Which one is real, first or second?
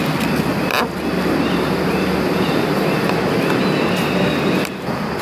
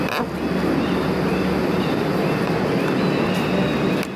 second